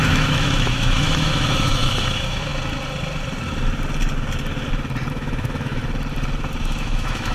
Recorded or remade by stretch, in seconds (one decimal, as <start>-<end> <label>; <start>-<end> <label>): 0.0-2.5 remade; 2.5-5.1 recorded; 5.1-5.8 remade; 5.8-6.6 recorded; 6.6-7.3 remade